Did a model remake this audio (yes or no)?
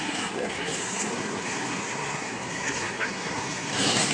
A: yes